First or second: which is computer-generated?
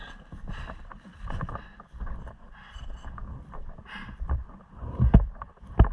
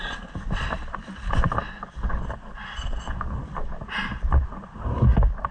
first